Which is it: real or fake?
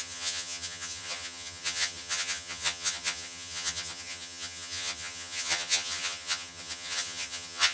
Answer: fake